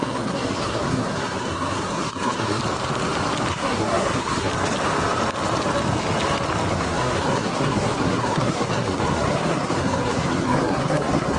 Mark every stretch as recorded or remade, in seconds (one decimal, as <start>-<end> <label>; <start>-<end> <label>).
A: 0.0-2.6 remade; 2.6-3.5 recorded; 3.5-4.5 remade; 4.5-6.7 recorded; 6.7-11.4 remade